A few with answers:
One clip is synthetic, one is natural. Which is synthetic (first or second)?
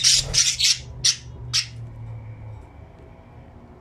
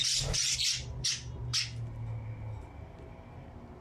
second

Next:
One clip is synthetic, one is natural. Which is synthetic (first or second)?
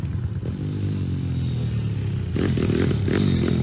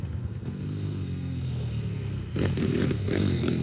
second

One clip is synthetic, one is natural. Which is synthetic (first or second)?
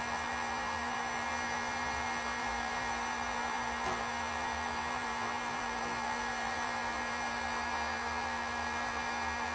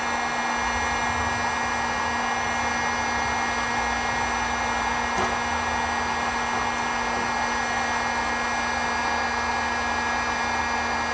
first